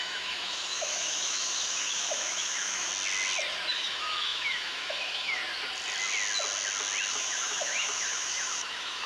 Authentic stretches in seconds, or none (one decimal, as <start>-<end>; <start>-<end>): 2.9-3.7; 5.4-7.1